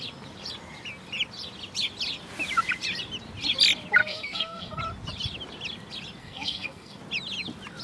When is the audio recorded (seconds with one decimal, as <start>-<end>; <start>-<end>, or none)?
0.0-4.0; 4.8-6.2; 7.0-7.8